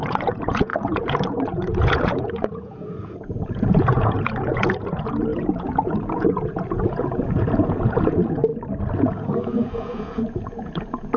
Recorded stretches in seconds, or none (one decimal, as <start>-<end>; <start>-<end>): 8.5-9.0